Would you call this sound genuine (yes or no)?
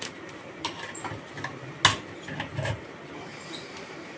yes